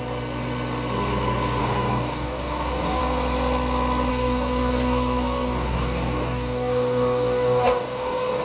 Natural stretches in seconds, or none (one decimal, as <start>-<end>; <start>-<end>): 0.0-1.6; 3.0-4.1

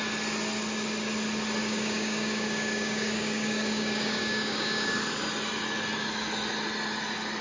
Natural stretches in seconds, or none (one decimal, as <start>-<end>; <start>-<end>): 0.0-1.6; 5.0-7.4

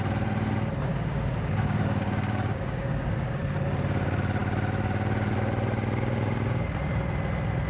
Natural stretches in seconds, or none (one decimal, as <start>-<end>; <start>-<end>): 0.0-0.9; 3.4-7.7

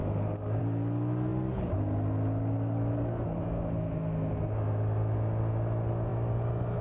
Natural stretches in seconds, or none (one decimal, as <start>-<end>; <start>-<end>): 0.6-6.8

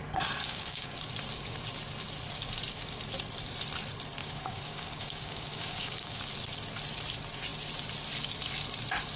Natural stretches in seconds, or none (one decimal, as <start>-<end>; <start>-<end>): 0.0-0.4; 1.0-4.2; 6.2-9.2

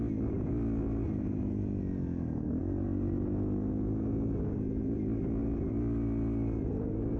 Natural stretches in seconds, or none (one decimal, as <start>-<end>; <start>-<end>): 0.0-7.2

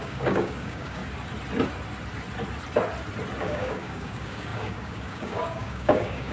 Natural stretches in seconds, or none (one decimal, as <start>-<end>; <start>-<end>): 1.0-3.4

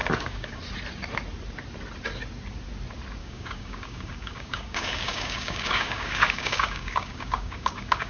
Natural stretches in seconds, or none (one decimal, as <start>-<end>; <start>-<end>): 0.6-3.2